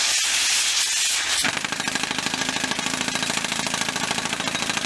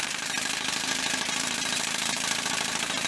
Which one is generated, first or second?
second